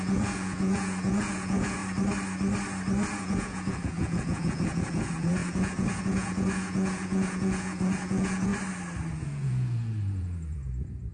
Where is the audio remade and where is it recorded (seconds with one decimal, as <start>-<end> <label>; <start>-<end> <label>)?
0.0-1.8 remade; 1.8-3.2 recorded; 3.2-8.5 remade; 8.5-9.2 recorded; 9.2-11.1 remade